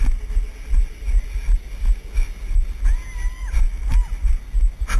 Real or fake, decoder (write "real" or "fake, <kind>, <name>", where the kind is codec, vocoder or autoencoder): real